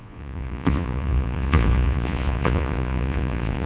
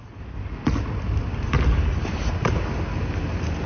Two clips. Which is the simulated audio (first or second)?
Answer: first